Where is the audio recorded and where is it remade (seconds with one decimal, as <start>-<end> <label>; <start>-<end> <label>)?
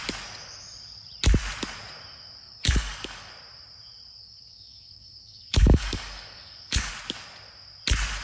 0.0-2.4 recorded; 2.4-3.3 remade; 3.3-4.2 recorded; 4.2-6.9 remade; 6.9-8.2 recorded